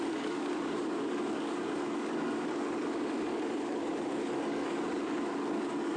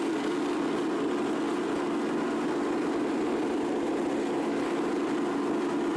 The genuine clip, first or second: second